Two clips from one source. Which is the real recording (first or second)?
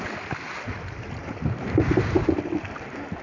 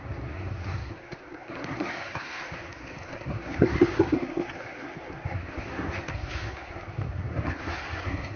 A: first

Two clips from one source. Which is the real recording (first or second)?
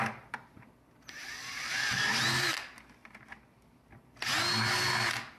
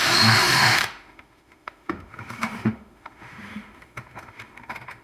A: first